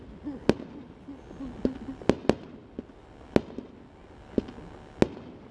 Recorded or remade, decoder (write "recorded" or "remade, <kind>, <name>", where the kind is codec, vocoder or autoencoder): recorded